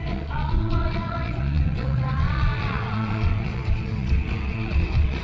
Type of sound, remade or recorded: remade